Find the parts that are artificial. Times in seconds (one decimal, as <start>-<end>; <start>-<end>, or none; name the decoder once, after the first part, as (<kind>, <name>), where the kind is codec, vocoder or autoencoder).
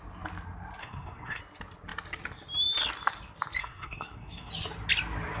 0.8-1.4 (codec, SNAC); 3.6-4.5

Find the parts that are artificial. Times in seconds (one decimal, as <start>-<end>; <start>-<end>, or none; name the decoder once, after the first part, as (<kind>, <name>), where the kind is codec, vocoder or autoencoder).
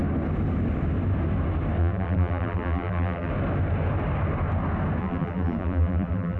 1.8-3.3 (vocoder, BigVGAN v2); 5.0-6.4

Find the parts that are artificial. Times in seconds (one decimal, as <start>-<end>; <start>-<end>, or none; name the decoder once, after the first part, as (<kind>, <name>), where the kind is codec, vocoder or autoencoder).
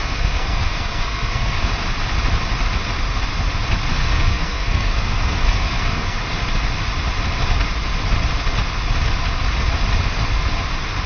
0.0-1.7 (codec, SNAC); 3.9-6.2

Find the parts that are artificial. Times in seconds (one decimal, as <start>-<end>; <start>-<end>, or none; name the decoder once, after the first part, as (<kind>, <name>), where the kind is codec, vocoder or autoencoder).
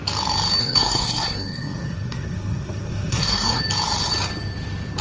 0.6-3.6 (codec, SNAC)